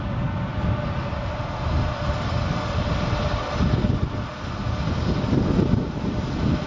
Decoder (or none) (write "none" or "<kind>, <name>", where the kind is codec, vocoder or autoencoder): none